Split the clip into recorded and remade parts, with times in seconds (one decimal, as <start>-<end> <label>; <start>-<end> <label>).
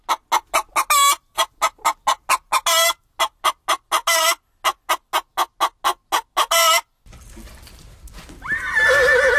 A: 0.0-9.4 recorded